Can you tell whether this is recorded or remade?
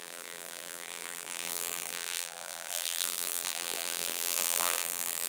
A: remade